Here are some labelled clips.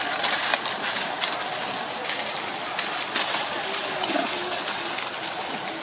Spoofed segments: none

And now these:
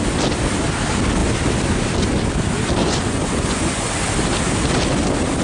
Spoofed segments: 2.8-3.9

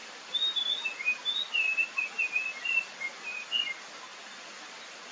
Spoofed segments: 4.1-4.6

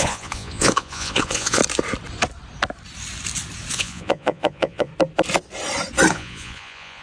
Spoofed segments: 0.0-1.6; 3.7-4.9; 6.1-7.0